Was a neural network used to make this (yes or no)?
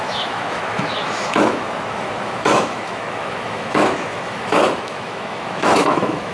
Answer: yes